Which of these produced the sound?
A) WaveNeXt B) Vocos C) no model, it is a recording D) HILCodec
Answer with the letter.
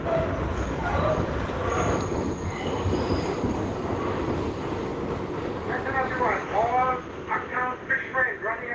C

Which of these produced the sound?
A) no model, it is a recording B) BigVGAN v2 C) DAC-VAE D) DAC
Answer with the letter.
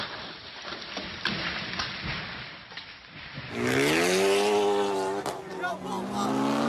A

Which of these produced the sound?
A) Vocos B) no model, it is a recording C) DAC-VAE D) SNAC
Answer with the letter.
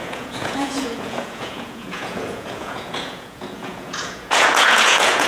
A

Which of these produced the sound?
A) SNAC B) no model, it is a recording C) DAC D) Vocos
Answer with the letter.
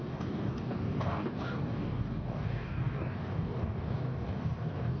C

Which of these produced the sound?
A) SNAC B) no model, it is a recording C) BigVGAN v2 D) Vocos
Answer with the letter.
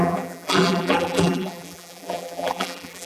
C